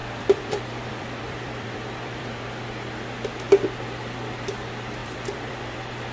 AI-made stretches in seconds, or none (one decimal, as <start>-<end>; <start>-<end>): 0.0-2.4; 5.0-5.6